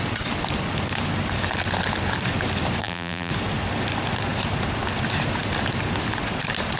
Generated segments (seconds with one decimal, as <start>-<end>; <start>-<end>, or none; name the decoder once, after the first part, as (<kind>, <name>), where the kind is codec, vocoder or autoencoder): 2.8-3.3 (vocoder, BigVGAN v2)